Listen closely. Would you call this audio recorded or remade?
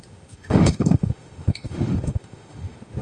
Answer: remade